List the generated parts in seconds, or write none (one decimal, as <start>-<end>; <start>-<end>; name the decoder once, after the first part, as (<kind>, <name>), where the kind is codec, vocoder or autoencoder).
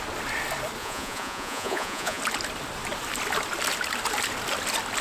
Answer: 0.8-2.2 (vocoder, Vocos)